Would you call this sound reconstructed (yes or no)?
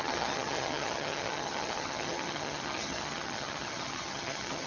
yes